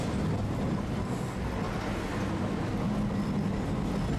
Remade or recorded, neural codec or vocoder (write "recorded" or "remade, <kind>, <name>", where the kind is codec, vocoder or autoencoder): recorded